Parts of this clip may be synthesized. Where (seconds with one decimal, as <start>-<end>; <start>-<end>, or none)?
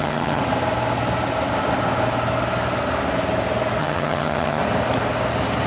0.0-0.4; 3.8-4.6